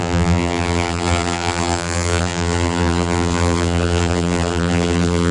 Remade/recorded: remade